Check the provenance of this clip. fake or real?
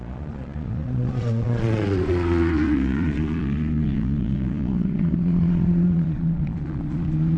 fake